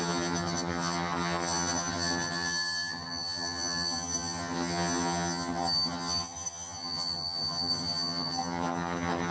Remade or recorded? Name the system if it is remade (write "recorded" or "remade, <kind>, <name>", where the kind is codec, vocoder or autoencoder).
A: remade, vocoder, HiFi-GAN